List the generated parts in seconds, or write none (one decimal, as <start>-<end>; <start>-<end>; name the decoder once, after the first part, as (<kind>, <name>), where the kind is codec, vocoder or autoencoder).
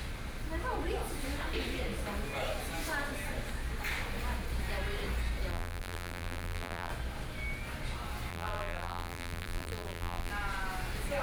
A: 5.5-6.9 (vocoder, BigVGAN v2); 8.3-10.3